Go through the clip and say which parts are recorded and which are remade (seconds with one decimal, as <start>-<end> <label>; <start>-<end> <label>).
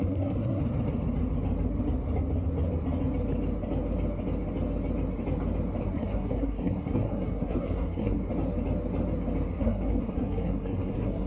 0.0-0.6 remade; 0.6-5.8 recorded; 5.8-8.2 remade; 8.2-9.5 recorded; 9.5-11.3 remade